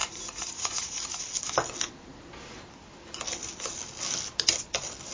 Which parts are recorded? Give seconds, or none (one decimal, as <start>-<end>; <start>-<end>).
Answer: 1.2-5.1